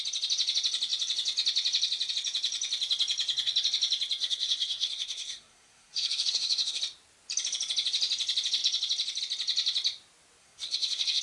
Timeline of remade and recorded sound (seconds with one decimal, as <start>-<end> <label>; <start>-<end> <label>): 0.0-4.2 recorded; 4.2-6.8 remade; 6.8-10.4 recorded; 10.4-11.2 remade